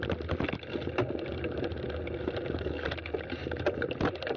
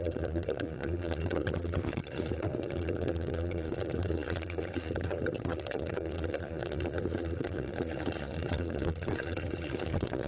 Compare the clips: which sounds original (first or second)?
first